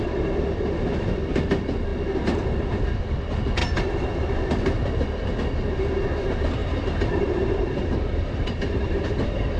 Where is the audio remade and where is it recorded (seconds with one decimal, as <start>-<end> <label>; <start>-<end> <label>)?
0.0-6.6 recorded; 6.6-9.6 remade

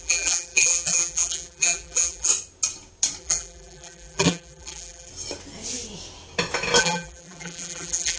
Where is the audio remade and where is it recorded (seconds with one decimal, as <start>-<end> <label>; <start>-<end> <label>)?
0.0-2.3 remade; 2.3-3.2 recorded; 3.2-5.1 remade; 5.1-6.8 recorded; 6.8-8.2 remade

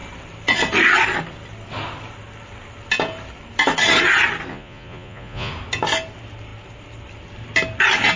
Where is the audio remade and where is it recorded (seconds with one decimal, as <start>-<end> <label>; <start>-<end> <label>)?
0.0-4.5 recorded; 4.5-5.5 remade; 5.5-8.2 recorded

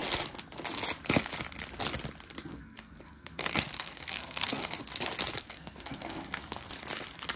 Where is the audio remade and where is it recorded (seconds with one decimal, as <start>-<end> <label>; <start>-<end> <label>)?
0.0-2.5 recorded; 2.5-4.8 remade; 4.8-5.4 recorded; 5.4-6.7 remade; 6.7-7.4 recorded

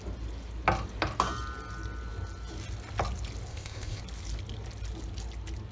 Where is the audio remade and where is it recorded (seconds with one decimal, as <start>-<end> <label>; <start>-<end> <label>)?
0.0-3.5 recorded; 3.5-4.0 remade; 4.0-5.7 recorded

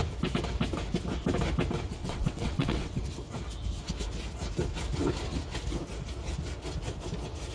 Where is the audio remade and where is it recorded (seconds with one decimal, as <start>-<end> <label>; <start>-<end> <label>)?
0.0-2.0 recorded; 2.0-3.0 remade; 3.0-7.5 recorded

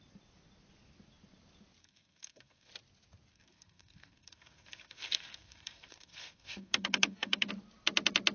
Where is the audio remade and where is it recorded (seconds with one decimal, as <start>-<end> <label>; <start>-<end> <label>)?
0.0-1.8 recorded; 1.8-2.7 remade; 2.7-3.3 recorded; 3.3-7.5 remade; 7.5-8.3 recorded